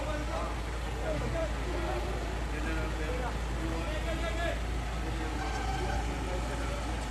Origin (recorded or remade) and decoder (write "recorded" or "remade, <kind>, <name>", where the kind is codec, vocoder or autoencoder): recorded